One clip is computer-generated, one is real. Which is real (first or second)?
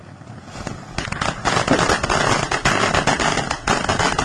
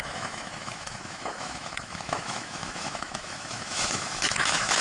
first